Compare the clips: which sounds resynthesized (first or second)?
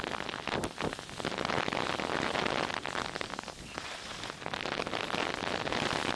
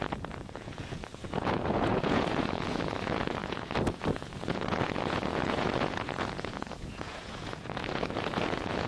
second